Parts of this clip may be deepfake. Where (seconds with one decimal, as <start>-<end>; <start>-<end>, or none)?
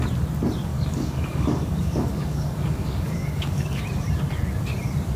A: 0.7-3.8